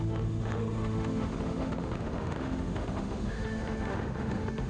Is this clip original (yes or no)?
no